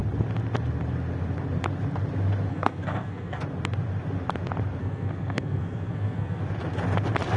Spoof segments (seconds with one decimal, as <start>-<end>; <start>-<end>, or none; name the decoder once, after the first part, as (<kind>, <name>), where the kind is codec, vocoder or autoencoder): 2.5-3.4 (codec, SNAC); 4.8-6.4